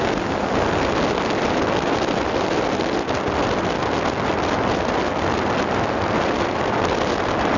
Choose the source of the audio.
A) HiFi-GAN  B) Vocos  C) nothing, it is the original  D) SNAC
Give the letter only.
C